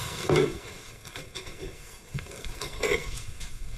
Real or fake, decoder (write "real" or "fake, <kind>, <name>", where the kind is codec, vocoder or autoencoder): fake, codec, SNAC